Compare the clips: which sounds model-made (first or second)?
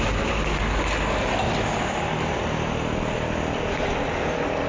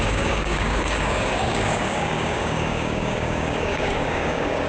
second